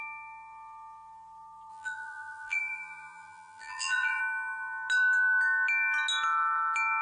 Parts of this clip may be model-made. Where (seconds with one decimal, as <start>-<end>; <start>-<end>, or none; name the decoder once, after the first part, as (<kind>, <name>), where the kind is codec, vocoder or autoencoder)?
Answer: 1.7-4.2 (vocoder, BigVGAN v2)